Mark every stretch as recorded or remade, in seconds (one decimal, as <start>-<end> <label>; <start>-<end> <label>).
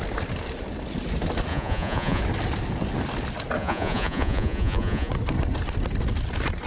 0.0-1.5 recorded; 1.5-2.2 remade; 2.2-3.6 recorded; 3.6-5.1 remade; 5.1-6.7 recorded